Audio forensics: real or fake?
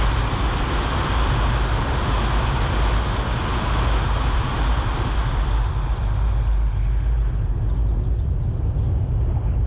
real